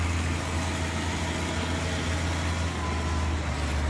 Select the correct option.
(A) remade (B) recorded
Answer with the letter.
B